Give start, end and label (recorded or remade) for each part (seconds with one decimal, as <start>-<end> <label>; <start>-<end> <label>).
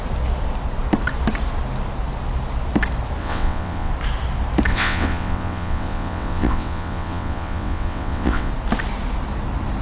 0.0-3.2 recorded; 3.2-3.9 remade; 3.9-4.7 recorded; 4.7-8.5 remade; 8.5-9.8 recorded